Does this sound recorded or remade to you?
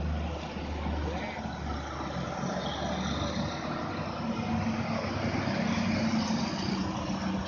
recorded